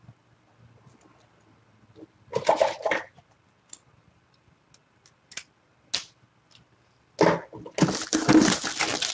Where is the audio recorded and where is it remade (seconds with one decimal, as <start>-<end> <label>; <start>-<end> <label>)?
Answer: 0.0-9.1 recorded